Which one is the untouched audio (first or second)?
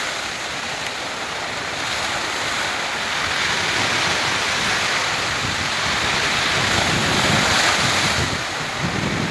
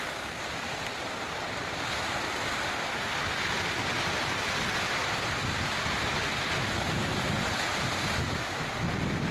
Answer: second